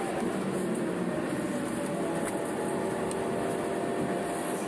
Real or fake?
real